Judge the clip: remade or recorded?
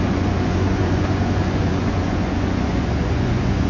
remade